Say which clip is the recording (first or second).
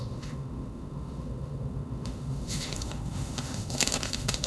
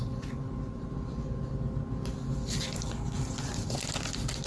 second